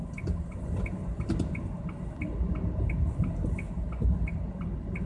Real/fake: real